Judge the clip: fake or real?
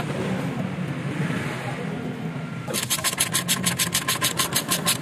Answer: real